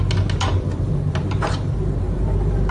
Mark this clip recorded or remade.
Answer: recorded